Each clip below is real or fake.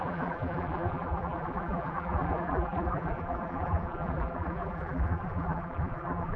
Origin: fake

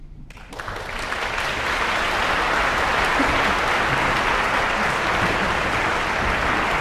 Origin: real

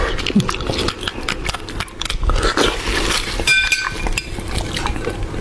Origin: real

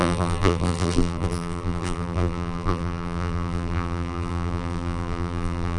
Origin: fake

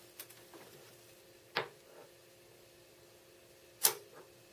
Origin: real